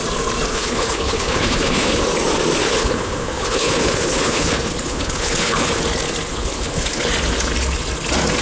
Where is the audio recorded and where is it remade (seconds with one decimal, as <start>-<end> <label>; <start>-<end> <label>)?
0.0-0.5 recorded; 0.5-2.0 remade; 2.0-2.6 recorded; 2.6-5.8 remade; 5.8-6.3 recorded; 6.3-7.1 remade; 7.1-8.4 recorded

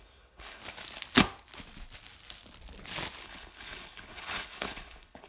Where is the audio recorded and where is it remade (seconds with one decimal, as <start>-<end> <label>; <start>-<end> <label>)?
0.0-0.6 remade; 0.6-3.2 recorded; 3.2-5.3 remade

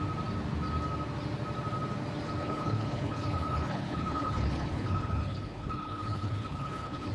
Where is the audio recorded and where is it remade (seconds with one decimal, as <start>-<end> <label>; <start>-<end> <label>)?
0.0-2.4 recorded; 2.4-7.1 remade

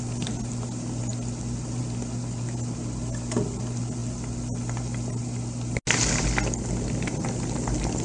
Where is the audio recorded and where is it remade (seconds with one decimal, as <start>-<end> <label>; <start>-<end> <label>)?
0.0-8.0 recorded

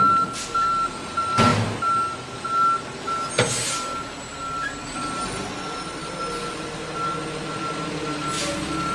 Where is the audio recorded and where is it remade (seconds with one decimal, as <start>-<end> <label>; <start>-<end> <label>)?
0.0-8.9 recorded

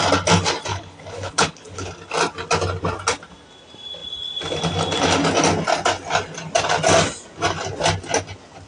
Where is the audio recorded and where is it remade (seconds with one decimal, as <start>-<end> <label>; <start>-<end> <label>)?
0.0-0.7 recorded; 0.7-1.9 remade; 1.9-8.7 recorded